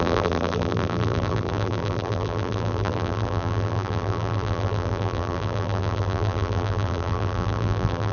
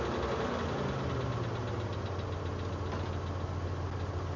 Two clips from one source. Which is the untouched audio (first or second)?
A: second